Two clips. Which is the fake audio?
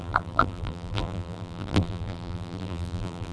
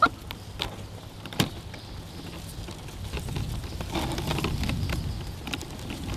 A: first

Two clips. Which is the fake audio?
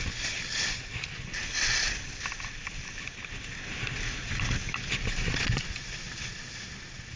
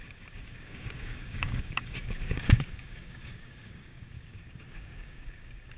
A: second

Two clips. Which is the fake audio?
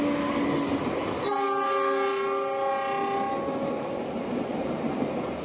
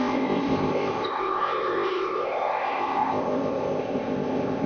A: second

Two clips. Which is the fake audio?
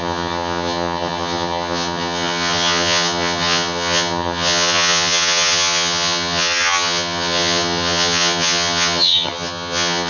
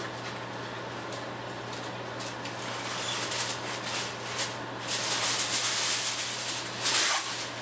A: first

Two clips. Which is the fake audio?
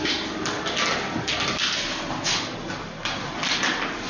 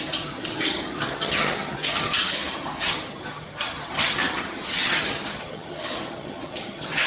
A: second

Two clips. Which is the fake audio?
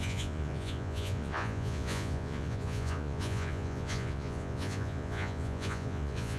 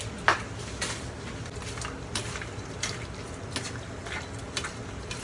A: first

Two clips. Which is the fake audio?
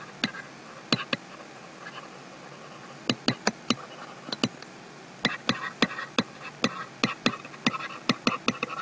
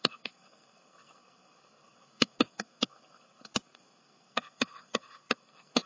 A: second